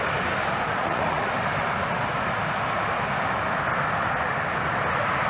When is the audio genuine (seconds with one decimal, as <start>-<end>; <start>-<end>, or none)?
0.0-0.8; 1.3-5.3